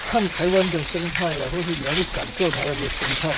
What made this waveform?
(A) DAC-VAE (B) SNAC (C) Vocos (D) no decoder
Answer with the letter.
C